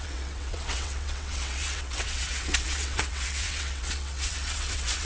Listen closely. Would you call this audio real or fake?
fake